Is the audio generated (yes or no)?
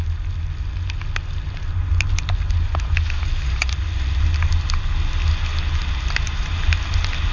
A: no